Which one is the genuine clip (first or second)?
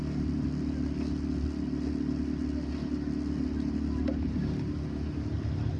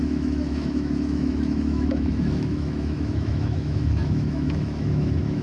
first